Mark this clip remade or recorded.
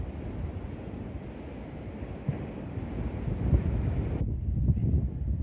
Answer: recorded